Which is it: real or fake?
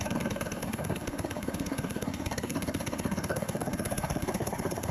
fake